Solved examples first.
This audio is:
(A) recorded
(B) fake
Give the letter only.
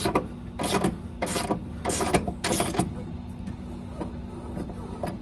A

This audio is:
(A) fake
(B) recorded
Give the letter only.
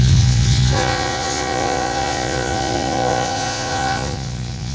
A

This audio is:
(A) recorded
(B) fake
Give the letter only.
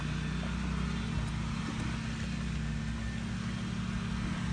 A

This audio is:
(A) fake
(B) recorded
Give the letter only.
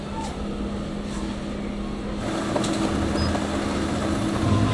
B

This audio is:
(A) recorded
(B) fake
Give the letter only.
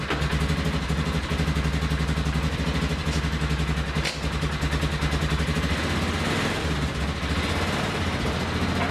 A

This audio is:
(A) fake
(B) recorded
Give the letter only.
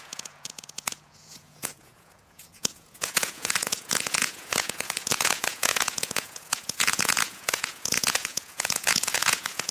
A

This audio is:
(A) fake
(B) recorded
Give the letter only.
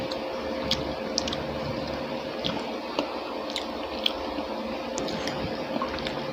B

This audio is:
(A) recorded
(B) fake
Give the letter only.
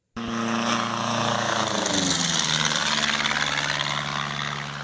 A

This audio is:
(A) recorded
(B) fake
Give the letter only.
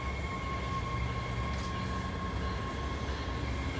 A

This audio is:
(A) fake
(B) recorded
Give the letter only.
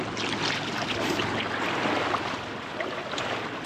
B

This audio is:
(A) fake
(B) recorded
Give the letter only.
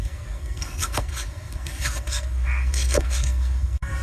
A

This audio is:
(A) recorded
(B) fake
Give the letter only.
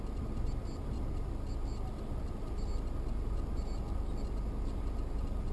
A